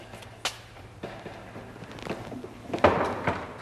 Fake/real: real